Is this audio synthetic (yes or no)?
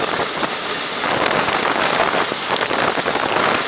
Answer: no